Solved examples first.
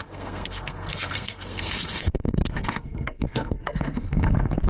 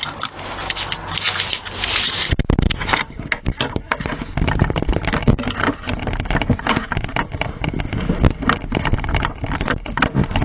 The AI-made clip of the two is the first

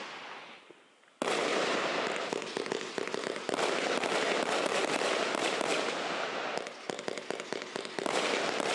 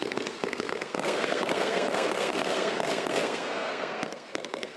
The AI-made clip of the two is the second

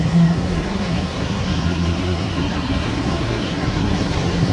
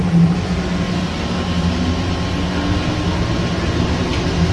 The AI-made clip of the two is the first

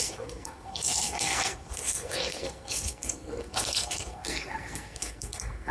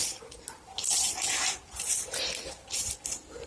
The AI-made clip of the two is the first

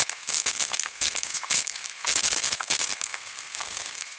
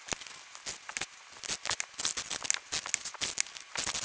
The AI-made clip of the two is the first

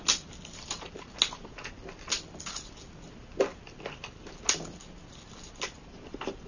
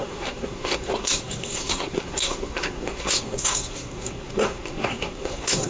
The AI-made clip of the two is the second